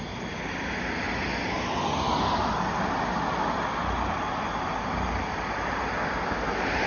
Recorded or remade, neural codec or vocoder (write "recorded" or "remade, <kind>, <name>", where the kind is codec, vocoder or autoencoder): recorded